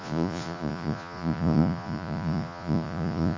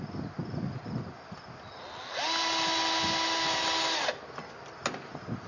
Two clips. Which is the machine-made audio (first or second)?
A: first